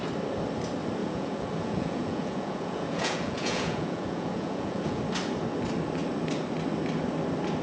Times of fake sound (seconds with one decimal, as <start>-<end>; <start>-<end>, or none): 1.0-5.0